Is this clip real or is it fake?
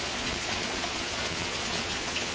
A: fake